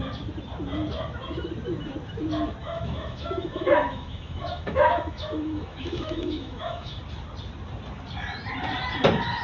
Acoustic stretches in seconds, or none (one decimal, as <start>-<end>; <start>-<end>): 0.0-2.6; 7.0-9.4